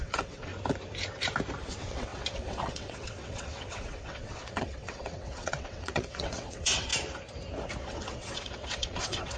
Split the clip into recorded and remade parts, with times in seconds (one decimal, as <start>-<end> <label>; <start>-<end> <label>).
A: 0.0-0.5 remade; 0.5-1.6 recorded; 1.6-6.9 remade; 6.9-7.8 recorded; 7.8-9.4 remade